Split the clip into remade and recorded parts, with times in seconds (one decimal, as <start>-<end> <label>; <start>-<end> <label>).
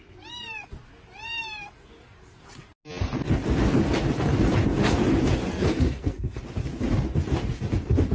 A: 0.0-5.5 recorded; 5.5-6.4 remade; 6.4-8.1 recorded